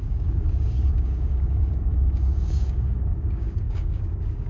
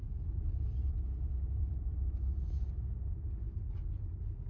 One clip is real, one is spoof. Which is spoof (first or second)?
first